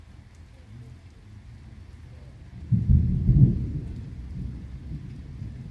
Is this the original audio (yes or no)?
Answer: yes